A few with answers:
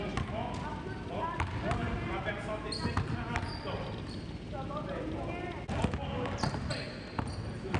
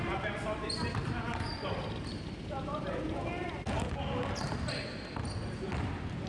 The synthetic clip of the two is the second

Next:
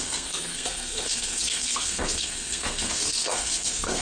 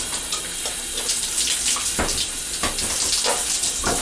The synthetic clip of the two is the first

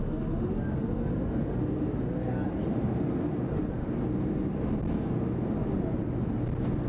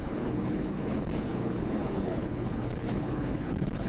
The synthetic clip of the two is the second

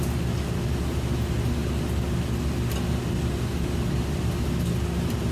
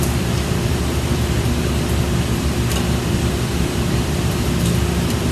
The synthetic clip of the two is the second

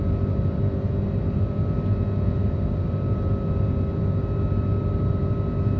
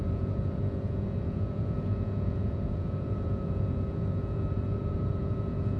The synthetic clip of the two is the second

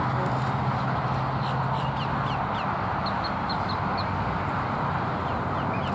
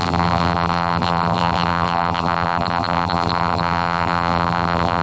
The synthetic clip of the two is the second